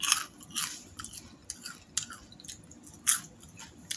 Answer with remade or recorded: recorded